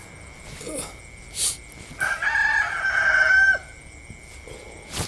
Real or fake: real